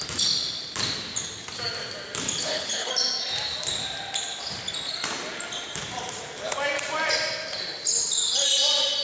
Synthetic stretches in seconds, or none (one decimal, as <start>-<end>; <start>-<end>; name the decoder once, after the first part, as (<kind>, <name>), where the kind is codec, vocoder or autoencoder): 2.4-2.9 (codec, HILCodec)